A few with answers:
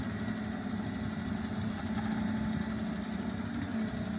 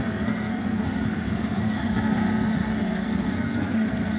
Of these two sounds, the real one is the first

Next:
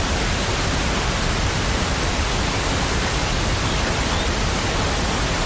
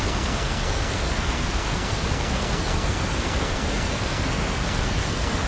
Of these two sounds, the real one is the first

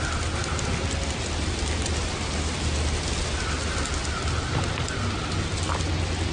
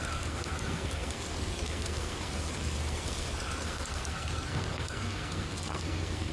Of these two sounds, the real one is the first